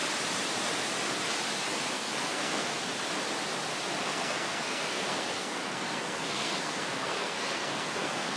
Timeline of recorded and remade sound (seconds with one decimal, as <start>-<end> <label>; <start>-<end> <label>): 0.0-1.9 recorded; 1.9-2.7 remade; 2.7-4.0 recorded; 4.0-8.4 remade